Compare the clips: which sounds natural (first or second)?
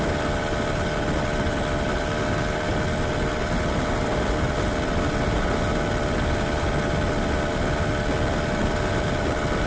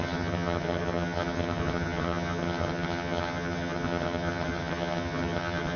first